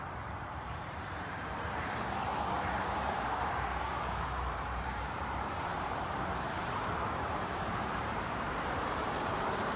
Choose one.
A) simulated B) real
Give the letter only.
A